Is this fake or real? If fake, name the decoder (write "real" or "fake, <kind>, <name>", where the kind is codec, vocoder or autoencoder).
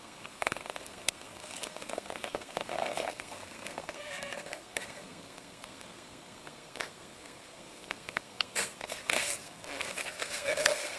fake, codec, SNAC